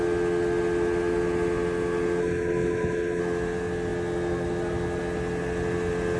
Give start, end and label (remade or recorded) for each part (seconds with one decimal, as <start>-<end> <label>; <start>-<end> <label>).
0.0-2.2 recorded; 2.2-3.2 remade; 3.2-6.2 recorded